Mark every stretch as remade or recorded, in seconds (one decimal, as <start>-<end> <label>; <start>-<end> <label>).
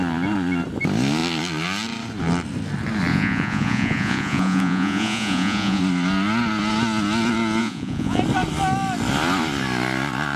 0.0-3.1 recorded; 3.1-5.8 remade; 5.8-7.6 recorded; 7.6-8.2 remade; 8.2-10.4 recorded